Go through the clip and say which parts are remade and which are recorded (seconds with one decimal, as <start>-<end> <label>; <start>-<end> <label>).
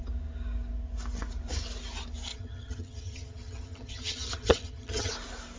0.0-2.3 recorded; 2.3-5.1 remade; 5.1-5.6 recorded